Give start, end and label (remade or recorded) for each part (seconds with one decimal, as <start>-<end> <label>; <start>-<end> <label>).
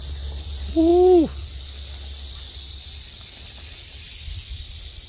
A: 0.0-5.1 recorded